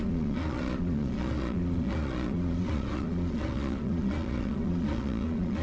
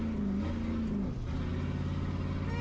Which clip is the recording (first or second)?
second